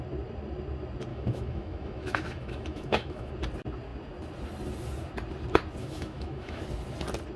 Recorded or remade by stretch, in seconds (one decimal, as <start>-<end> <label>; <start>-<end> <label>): 0.0-1.1 recorded; 1.1-3.3 remade; 3.3-5.8 recorded; 5.8-6.6 remade; 6.6-7.4 recorded